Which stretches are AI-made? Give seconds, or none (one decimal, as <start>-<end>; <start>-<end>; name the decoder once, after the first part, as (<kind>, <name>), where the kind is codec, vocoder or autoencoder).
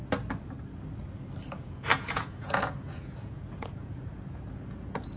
1.5-5.2 (vocoder, Vocos)